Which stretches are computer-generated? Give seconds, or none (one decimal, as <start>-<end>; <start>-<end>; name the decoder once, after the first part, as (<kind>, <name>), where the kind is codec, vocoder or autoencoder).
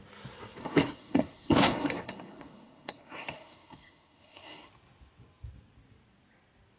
0.6-4.7 (codec, SNAC)